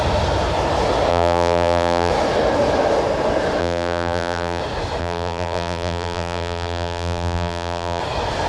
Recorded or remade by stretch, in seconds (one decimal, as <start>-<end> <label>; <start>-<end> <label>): 0.0-1.1 recorded; 1.1-2.1 remade; 2.1-3.6 recorded; 3.6-4.6 remade; 4.6-5.0 recorded; 5.0-8.0 remade; 8.0-8.5 recorded